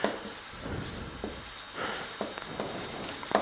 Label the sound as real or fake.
real